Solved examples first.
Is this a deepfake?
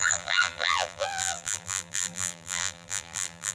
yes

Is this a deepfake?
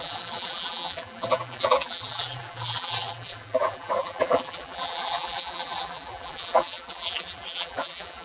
yes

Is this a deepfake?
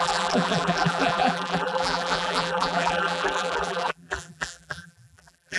yes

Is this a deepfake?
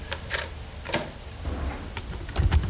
yes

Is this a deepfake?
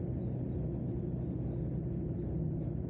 no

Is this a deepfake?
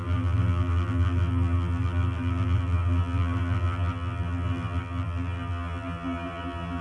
yes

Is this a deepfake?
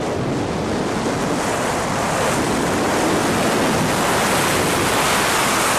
no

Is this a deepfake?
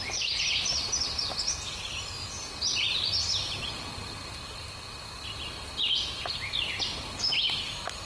no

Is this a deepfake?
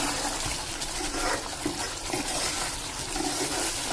yes